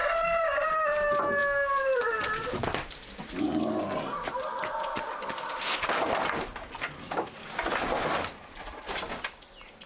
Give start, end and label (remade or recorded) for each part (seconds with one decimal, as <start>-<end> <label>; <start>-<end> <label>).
0.0-0.7 remade; 0.7-9.9 recorded